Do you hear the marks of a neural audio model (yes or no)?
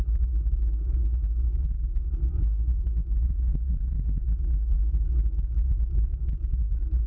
yes